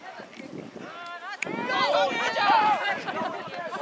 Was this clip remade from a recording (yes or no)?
no